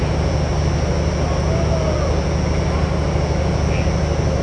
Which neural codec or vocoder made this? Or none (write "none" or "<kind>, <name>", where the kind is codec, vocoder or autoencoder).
none